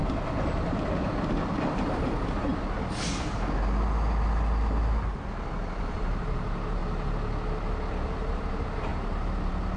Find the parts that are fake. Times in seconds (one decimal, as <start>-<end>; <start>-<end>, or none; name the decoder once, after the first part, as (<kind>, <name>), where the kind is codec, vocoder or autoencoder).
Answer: 1.5-2.5 (vocoder, BigVGAN v2); 5.8-6.8; 7.9-9.8